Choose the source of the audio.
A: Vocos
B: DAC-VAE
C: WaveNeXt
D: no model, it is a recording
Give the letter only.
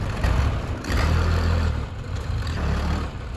D